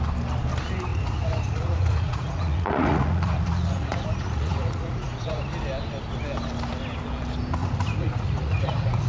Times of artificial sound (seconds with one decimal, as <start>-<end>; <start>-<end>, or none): 0.9-5.4; 7.6-9.1